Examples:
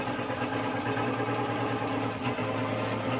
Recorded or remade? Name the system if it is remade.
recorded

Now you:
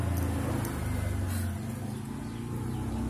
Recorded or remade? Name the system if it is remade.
recorded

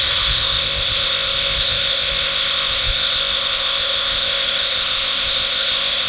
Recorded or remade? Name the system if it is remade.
remade, codec, ZipCodec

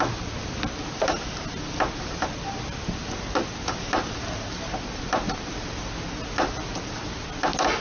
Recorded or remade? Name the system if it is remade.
recorded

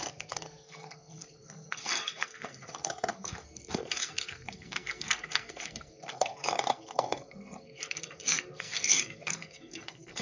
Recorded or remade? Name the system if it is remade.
remade, codec, SNAC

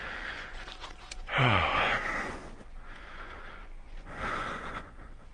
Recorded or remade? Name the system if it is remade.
remade, vocoder, Vocos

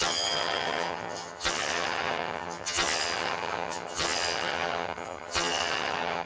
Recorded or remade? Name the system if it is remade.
remade, vocoder, HiFi-GAN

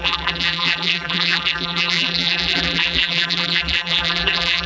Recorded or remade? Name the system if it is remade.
remade, vocoder, BigVGAN v2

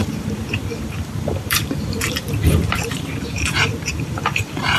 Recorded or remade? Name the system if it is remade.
remade, vocoder, BigVGAN v2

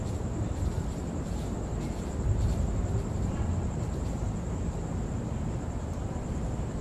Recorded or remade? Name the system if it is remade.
remade, vocoder, BigVGAN v2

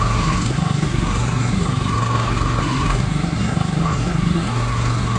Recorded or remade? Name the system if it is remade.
remade, codec, SNAC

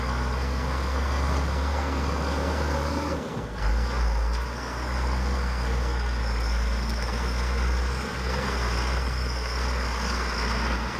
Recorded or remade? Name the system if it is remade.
remade, codec, SNAC